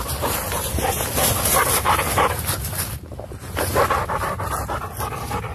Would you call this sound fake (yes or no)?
no